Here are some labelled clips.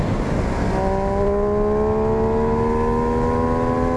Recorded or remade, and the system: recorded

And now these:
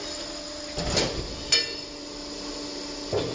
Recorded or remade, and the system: recorded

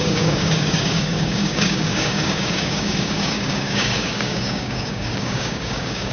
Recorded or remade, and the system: remade, codec, DAC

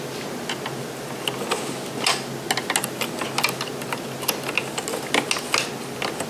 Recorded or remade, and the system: recorded